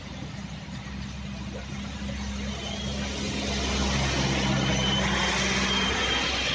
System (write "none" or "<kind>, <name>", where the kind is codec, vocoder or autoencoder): none